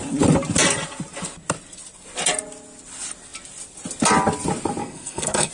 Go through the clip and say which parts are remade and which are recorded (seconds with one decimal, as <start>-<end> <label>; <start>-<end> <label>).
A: 0.0-4.8 recorded; 4.8-5.5 remade